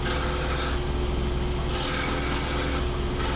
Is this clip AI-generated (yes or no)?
no